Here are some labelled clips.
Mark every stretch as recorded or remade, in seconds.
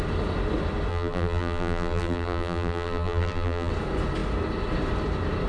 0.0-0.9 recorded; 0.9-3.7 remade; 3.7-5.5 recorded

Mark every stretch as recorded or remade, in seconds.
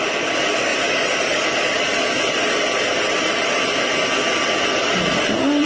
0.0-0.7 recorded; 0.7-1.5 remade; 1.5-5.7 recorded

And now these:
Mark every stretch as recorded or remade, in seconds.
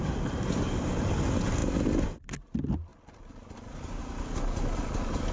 0.0-5.3 recorded